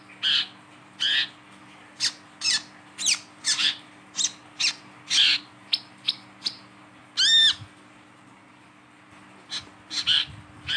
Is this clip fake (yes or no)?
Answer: no